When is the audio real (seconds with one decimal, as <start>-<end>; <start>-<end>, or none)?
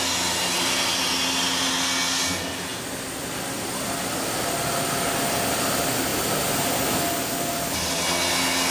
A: 0.0-8.7